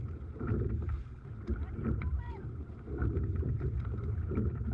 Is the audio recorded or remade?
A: remade